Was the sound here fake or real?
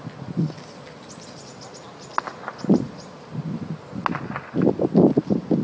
real